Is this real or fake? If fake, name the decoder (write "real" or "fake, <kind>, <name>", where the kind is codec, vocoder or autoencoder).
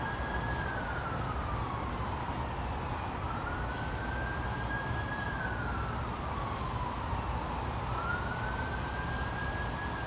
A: real